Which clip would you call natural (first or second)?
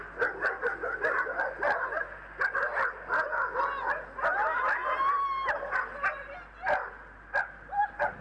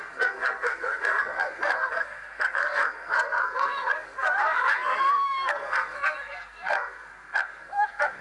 first